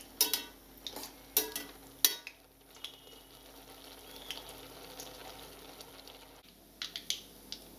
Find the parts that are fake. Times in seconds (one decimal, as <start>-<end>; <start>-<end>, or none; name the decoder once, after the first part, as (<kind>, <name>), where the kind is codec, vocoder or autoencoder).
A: none